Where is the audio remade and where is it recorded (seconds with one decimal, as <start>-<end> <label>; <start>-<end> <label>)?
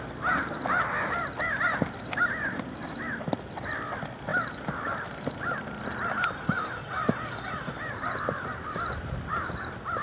0.0-10.0 recorded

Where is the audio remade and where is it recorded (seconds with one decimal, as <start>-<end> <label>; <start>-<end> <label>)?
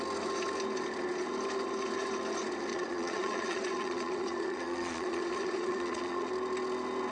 0.0-2.7 recorded; 2.7-6.3 remade; 6.3-7.1 recorded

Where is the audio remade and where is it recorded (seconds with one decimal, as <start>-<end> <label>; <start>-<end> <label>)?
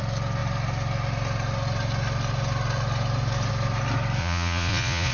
0.0-4.2 recorded; 4.2-5.1 remade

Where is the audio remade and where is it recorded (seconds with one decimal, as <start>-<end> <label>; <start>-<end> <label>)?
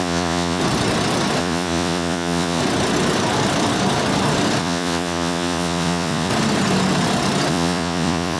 0.0-0.6 remade; 0.6-1.4 recorded; 1.4-2.6 remade; 2.6-4.6 recorded; 4.6-6.3 remade; 6.3-7.5 recorded; 7.5-8.4 remade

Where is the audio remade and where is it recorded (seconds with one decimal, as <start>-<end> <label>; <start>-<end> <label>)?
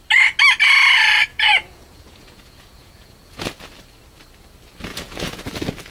0.0-1.3 recorded; 1.3-3.5 remade; 3.5-4.9 recorded; 4.9-5.4 remade; 5.4-5.9 recorded